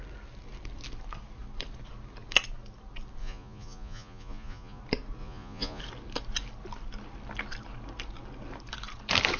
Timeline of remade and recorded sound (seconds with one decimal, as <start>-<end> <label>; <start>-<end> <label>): 0.0-3.2 recorded; 3.2-4.8 remade; 4.8-5.2 recorded; 5.2-5.8 remade; 5.8-9.4 recorded